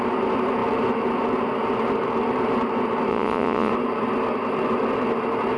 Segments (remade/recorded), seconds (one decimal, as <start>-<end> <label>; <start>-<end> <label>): 0.0-3.1 recorded; 3.1-3.7 remade; 3.7-5.6 recorded